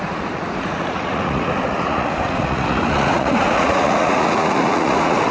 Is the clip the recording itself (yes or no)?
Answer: no